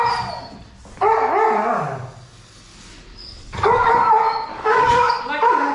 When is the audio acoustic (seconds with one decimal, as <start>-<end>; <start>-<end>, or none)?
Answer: 0.0-3.2; 3.9-4.5; 5.1-5.7